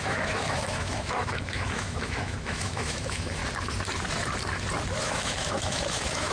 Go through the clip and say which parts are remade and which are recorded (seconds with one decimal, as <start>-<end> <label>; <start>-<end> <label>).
0.0-3.4 remade; 3.4-5.0 recorded; 5.0-6.3 remade